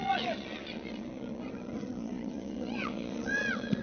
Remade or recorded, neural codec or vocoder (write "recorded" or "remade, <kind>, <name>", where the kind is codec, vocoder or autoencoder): remade, vocoder, Vocos